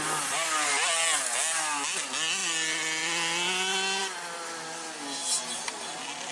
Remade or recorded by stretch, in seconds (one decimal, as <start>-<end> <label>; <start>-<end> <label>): 0.0-6.3 recorded